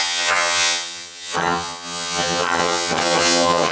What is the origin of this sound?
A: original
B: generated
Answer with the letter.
B